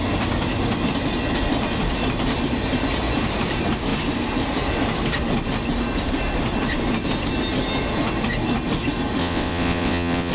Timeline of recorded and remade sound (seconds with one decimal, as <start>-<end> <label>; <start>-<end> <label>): 0.0-9.2 recorded; 9.2-10.3 remade